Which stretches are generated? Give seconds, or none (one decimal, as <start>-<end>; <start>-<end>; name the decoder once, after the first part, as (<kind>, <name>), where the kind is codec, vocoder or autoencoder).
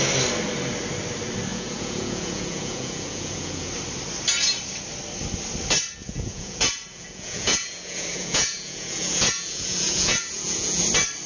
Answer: 1.5-3.7 (vocoder, Vocos); 6.0-10.8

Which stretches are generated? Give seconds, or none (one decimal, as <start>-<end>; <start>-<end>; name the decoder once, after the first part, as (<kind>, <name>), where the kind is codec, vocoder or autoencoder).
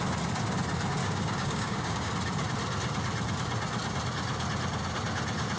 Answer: 1.0-2.1 (codec, DAC)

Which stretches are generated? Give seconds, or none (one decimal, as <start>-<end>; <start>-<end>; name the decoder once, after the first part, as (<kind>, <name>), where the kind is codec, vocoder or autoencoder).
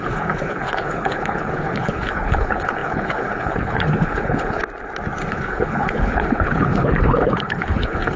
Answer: 0.0-4.6 (codec, HILCodec); 5.3-8.2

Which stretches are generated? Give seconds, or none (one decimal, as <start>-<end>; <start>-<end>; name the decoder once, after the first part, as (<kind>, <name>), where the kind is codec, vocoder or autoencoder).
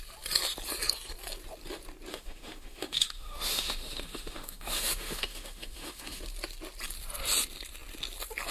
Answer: 2.1-6.2 (autoencoder, DAC-VAE)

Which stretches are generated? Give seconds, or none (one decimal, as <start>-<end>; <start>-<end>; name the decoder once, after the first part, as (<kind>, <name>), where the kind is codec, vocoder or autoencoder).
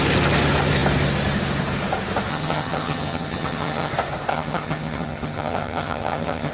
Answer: 2.3-3.9 (vocoder, HiFi-GAN); 4.3-6.5